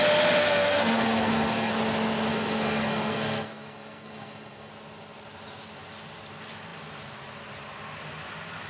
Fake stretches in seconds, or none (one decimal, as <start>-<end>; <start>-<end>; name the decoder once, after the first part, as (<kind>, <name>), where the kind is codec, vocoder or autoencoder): 0.4-1.7 (codec, SNAC); 2.3-4.7